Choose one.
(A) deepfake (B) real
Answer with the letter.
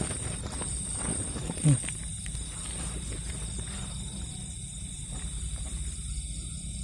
A